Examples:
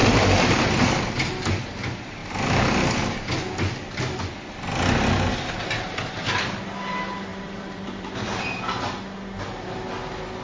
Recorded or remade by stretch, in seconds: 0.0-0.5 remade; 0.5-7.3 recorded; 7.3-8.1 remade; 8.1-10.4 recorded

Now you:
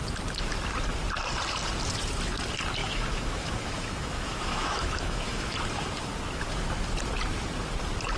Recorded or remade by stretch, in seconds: 0.0-2.8 recorded; 2.8-5.5 remade; 5.5-8.2 recorded

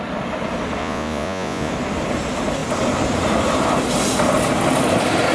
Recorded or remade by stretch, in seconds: 0.0-0.8 recorded; 0.8-1.7 remade; 1.7-5.3 recorded